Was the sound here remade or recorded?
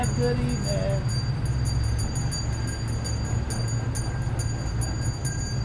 recorded